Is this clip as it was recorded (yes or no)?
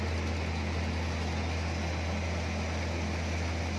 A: yes